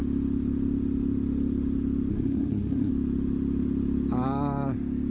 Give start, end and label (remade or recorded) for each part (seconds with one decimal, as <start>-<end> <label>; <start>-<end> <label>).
0.0-2.1 recorded; 2.1-2.9 remade; 2.9-5.1 recorded

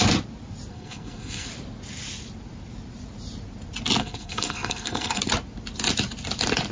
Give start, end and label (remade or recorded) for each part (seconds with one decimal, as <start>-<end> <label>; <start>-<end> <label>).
0.0-0.7 recorded; 0.7-1.5 remade; 1.5-4.0 recorded; 4.0-5.2 remade; 5.2-6.7 recorded

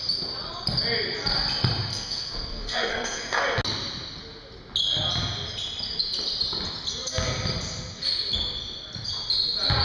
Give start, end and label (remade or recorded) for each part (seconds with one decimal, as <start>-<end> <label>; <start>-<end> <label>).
0.0-1.9 recorded; 1.9-3.4 remade; 3.4-9.8 recorded

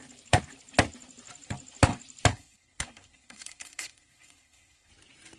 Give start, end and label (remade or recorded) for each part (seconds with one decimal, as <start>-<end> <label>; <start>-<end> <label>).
0.0-2.3 recorded; 2.3-4.9 remade; 4.9-5.4 recorded

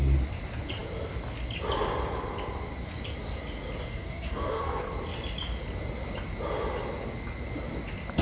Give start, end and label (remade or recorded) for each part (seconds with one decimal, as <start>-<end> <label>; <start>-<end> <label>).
0.0-3.9 recorded; 3.9-4.9 remade; 4.9-8.2 recorded